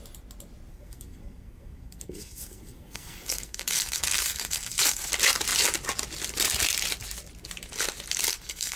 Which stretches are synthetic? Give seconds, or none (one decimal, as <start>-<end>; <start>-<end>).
0.7-5.1; 8.3-8.8